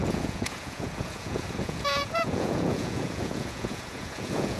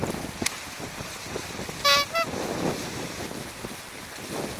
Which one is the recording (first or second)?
second